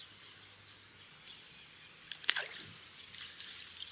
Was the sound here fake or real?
real